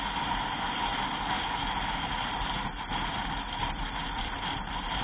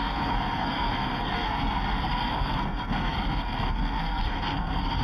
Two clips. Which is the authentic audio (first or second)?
first